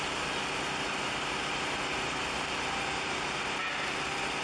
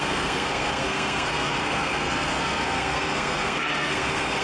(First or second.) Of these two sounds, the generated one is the second